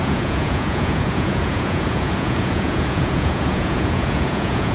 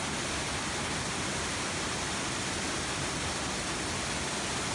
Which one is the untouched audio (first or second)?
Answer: second